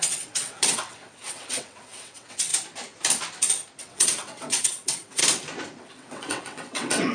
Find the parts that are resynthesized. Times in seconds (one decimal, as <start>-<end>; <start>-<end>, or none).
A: 0.0-2.5; 3.8-5.2; 5.8-7.1